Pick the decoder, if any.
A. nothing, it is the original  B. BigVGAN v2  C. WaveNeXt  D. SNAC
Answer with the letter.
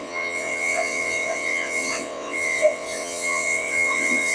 C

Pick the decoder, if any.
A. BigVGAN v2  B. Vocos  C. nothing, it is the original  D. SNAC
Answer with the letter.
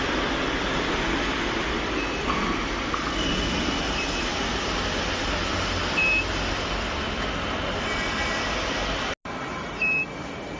C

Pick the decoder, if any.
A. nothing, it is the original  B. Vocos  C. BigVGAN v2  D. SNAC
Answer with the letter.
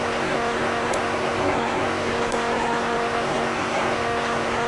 D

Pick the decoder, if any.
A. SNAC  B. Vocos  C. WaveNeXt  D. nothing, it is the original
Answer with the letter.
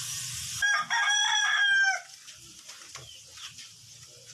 D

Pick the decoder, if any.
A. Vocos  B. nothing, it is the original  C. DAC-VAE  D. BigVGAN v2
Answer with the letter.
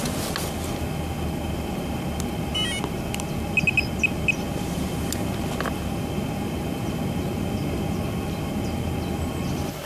B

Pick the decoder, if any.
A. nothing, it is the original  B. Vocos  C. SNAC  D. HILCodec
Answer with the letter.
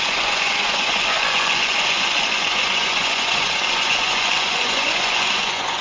B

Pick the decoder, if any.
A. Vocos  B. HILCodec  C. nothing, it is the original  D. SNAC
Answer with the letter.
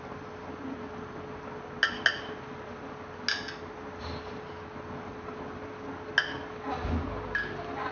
C